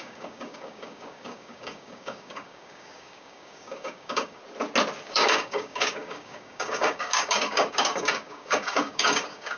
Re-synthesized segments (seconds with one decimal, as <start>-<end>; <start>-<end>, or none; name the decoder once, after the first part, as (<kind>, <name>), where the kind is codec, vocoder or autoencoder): 0.0-4.4 (codec, DAC); 5.0-9.6